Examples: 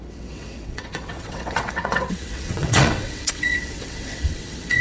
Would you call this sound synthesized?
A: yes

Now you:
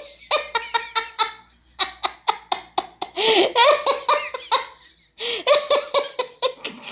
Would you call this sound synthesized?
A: no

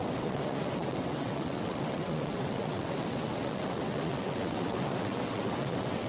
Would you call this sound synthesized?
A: yes